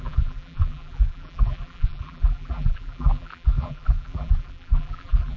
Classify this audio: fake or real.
fake